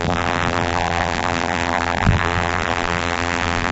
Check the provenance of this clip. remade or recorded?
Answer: remade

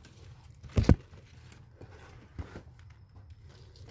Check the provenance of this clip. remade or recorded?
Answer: recorded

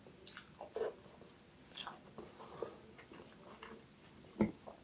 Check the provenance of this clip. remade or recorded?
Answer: recorded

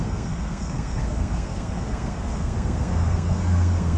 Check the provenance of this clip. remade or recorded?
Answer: remade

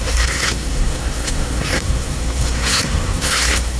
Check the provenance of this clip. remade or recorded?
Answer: remade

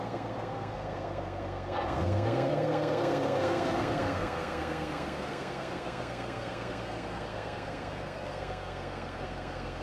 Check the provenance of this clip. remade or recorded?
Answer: remade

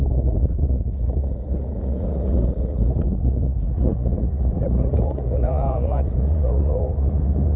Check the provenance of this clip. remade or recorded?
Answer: remade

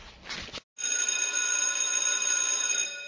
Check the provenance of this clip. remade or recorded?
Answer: recorded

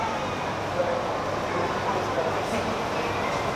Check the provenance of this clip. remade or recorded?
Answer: recorded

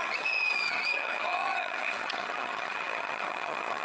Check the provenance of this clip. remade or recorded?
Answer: remade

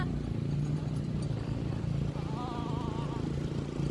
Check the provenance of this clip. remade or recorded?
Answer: recorded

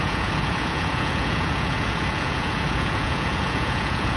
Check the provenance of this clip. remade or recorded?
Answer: remade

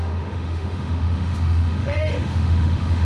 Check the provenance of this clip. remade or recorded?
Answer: remade